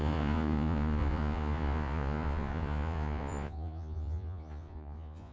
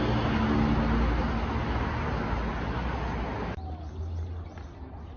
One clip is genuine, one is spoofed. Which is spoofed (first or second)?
first